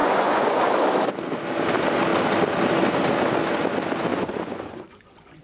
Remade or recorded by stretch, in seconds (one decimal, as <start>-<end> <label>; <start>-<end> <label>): 0.0-0.6 remade; 0.6-4.1 recorded; 4.1-5.4 remade